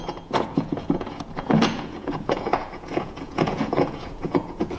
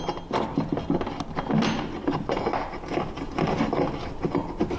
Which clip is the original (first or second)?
second